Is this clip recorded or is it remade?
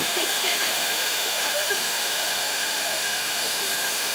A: remade